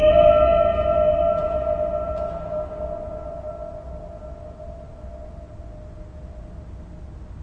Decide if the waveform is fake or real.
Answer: real